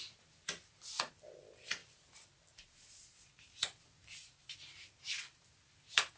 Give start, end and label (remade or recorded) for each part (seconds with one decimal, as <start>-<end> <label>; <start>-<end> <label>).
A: 0.0-6.2 recorded